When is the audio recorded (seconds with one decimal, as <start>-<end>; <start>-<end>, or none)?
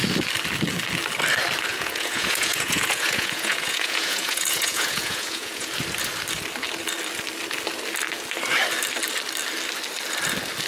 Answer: 0.0-1.7; 5.7-10.7